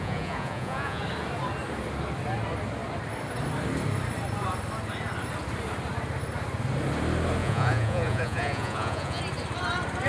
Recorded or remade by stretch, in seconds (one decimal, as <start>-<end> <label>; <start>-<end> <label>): 0.0-1.0 remade; 1.0-7.4 recorded; 7.4-9.2 remade; 9.2-10.1 recorded